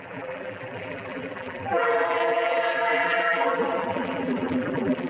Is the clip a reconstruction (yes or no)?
yes